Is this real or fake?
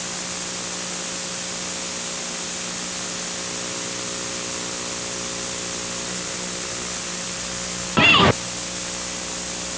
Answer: real